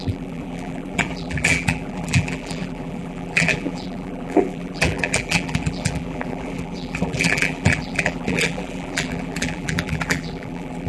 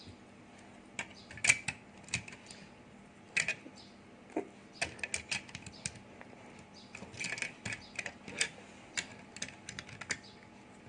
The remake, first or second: first